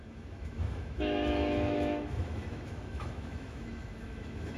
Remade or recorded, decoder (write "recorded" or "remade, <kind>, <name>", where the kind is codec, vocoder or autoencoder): remade, autoencoder, DAC-VAE